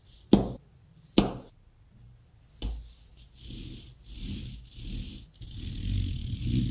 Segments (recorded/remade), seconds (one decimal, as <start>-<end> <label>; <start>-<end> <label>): 0.0-6.7 recorded